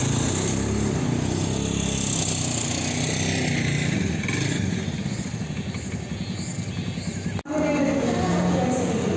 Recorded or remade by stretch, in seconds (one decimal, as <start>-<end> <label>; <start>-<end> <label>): 0.0-9.2 recorded